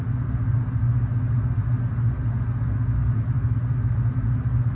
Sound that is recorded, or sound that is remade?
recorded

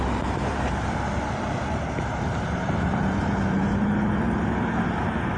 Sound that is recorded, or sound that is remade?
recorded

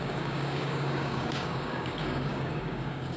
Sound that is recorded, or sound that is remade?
remade